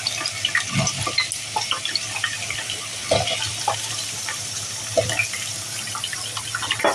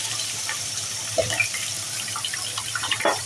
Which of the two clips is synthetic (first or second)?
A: second